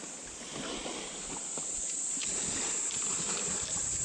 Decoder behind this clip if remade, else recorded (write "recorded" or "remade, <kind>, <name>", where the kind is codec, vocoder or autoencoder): recorded